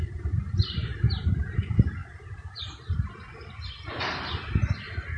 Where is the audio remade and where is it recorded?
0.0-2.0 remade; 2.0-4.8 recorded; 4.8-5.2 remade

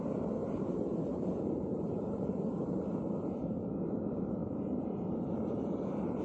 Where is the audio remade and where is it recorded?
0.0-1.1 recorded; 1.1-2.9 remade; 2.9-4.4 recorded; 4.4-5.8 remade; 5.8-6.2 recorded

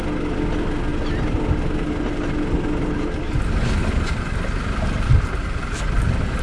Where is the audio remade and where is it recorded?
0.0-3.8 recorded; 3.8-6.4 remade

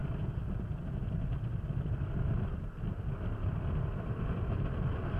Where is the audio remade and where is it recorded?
0.0-1.5 recorded; 1.5-5.2 remade

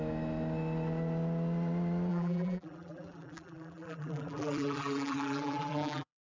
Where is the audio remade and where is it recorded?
0.0-2.1 recorded; 2.1-6.3 remade

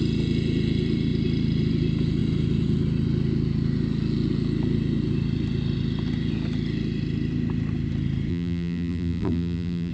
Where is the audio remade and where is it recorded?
0.0-8.3 recorded; 8.3-9.9 remade